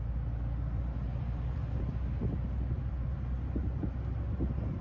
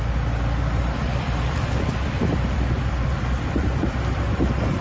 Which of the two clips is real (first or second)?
first